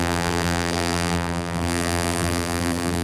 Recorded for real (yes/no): no